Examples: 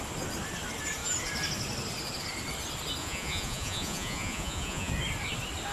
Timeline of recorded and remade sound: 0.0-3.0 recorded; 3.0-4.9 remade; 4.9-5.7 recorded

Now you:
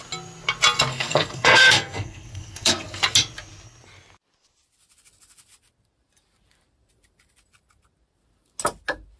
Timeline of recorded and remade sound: 0.0-0.9 recorded; 0.9-3.0 remade; 3.0-9.2 recorded

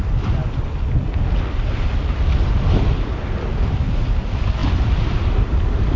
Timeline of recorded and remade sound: 0.0-6.0 recorded

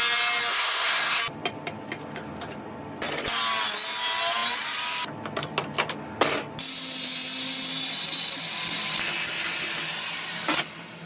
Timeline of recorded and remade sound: 0.0-0.5 recorded; 0.5-1.2 remade; 1.2-11.1 recorded

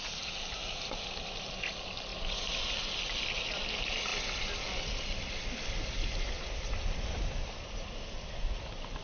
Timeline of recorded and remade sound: 0.0-9.0 recorded

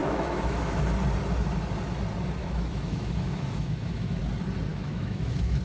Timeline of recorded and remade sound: 0.0-0.8 remade; 0.8-2.4 recorded; 2.4-4.2 remade; 4.2-4.7 recorded; 4.7-5.6 remade

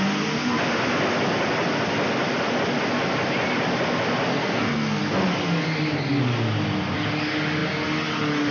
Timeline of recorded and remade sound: 0.0-4.3 recorded; 4.3-5.0 remade; 5.0-8.5 recorded

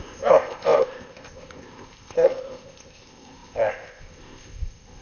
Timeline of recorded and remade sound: 0.0-5.0 remade